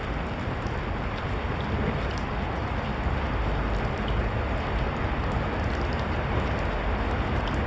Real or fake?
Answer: real